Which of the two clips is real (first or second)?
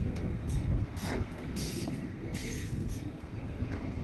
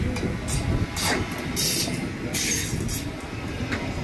second